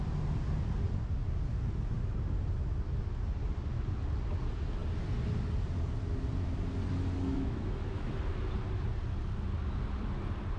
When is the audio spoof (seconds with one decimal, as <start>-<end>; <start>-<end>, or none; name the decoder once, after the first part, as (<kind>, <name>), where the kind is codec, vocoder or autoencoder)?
7.3-8.2 (autoencoder, DAC-VAE)